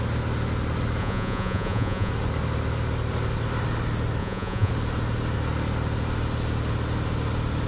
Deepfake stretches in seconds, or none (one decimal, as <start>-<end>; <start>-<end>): 1.0-2.1; 4.2-4.7